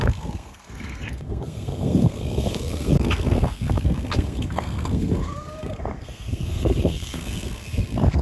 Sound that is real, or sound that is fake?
fake